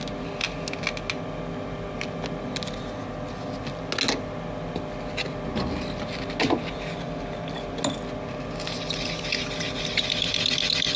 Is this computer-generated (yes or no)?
no